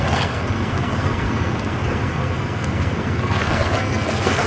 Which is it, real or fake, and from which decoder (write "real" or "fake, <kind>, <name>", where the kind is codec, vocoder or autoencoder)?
fake, codec, SNAC